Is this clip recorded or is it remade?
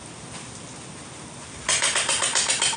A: recorded